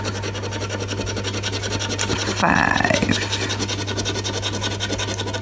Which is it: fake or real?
real